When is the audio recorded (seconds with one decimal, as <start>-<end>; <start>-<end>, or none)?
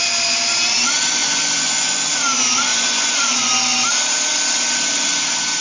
0.0-1.2; 2.0-2.7; 3.5-5.6